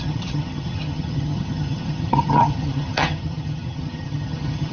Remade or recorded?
remade